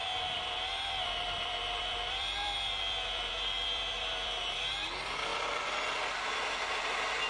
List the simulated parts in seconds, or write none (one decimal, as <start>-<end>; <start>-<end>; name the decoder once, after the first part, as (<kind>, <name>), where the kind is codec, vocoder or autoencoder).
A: 0.0-2.7 (vocoder, BigVGAN v2)